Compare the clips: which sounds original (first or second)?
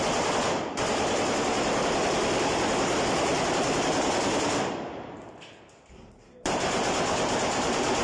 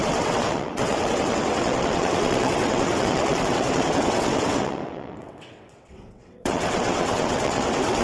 first